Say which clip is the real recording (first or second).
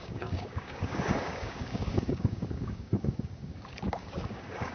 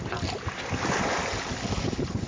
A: second